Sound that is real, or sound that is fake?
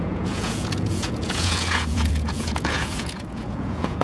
fake